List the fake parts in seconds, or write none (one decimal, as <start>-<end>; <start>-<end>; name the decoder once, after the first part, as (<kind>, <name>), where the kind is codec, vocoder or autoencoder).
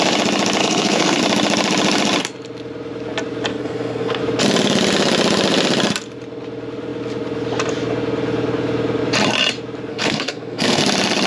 0.6-1.2 (codec, SNAC); 3.5-4.2; 9.9-10.8